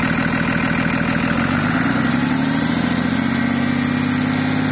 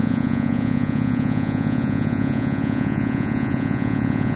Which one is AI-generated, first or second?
second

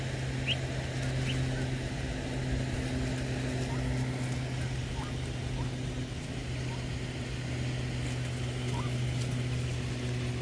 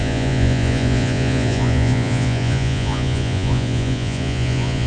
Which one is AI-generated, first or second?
second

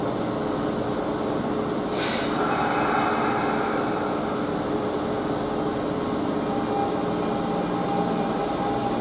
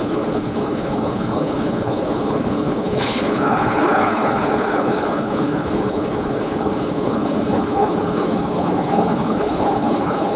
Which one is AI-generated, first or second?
second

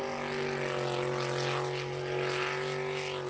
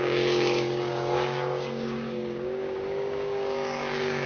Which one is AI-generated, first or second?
second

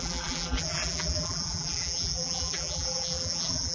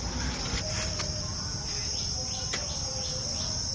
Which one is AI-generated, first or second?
first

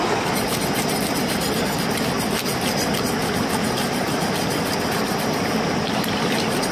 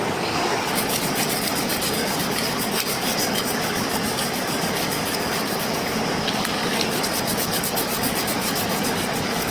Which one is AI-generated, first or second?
second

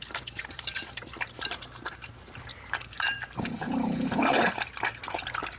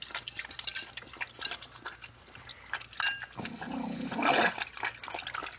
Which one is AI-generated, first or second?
first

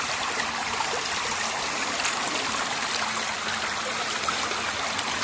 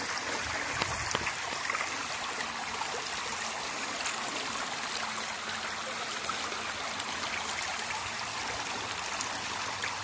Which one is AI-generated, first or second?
first